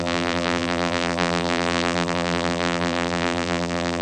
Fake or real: fake